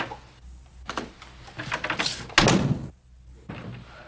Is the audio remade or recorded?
recorded